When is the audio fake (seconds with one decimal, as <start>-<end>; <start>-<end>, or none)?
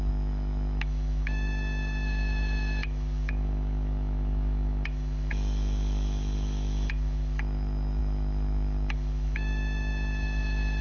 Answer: 0.0-10.8